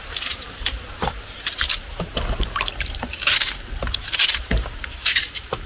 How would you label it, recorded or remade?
remade